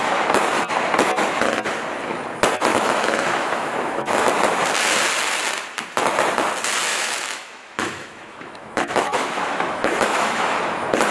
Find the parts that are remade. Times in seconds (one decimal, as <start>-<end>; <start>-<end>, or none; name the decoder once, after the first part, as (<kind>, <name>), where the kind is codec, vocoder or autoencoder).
2.7-4.2 (autoencoder, DAC-VAE); 6.9-10.6